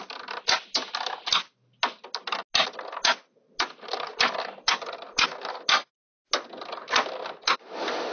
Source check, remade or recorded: recorded